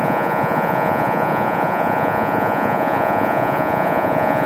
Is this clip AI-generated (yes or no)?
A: yes